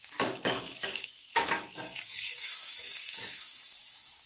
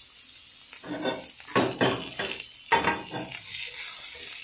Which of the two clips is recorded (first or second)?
second